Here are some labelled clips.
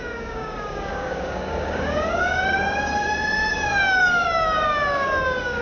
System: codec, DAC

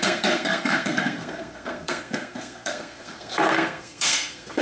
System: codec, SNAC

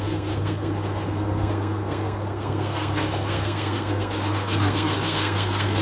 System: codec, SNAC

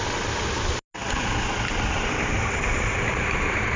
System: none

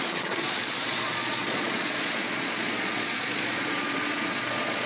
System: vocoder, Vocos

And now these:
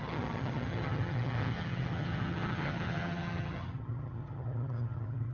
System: vocoder, HiFi-GAN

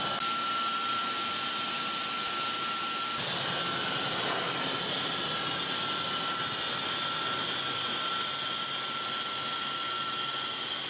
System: none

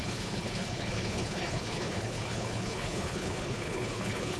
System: codec, HILCodec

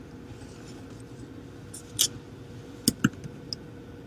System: none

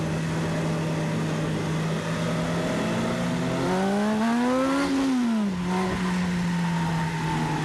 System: none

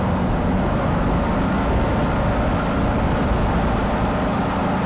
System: none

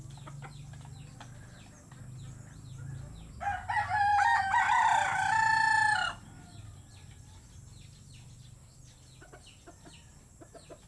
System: none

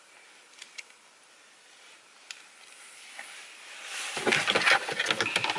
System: none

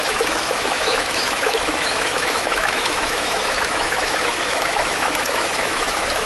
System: autoencoder, DAC-VAE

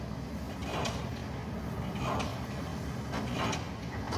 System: none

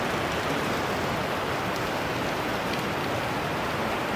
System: none